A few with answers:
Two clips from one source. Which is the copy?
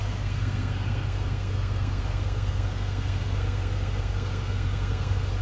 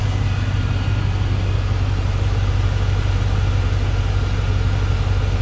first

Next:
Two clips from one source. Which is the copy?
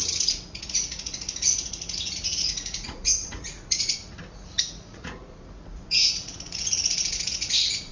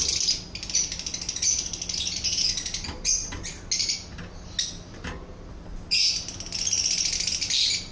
first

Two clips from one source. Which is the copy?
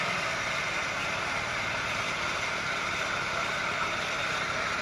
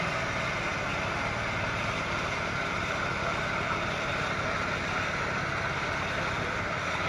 first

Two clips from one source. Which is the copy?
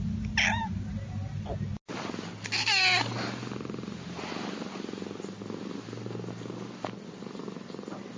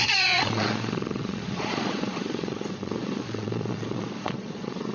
second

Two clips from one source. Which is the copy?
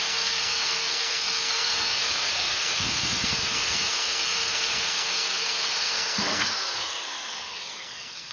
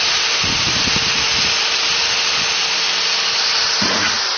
first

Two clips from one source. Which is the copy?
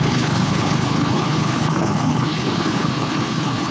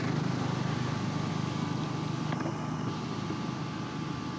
first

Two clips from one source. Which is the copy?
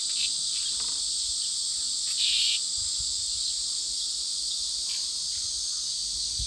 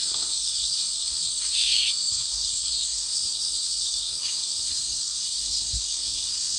second